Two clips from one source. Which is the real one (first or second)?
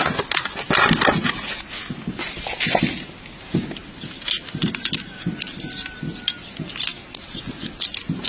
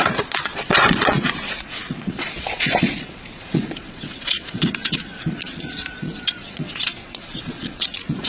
first